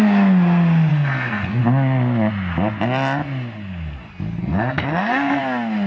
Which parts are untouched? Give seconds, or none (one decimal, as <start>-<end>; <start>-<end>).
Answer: 0.0-0.9; 1.6-4.4; 5.4-5.9